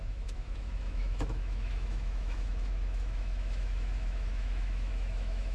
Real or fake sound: fake